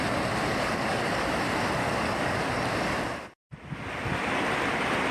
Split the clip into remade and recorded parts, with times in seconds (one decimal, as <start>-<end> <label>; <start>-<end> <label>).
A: 0.0-0.5 recorded; 0.5-1.4 remade; 1.4-1.8 recorded; 1.8-2.5 remade; 2.5-5.1 recorded